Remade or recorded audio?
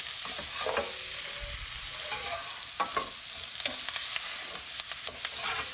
recorded